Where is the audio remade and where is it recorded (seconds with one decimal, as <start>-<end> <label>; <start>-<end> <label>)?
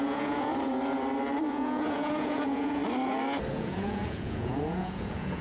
0.0-0.5 remade; 0.5-1.5 recorded; 1.5-2.8 remade; 2.8-3.5 recorded; 3.5-5.4 remade